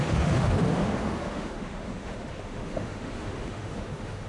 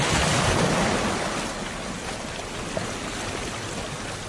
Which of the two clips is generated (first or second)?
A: first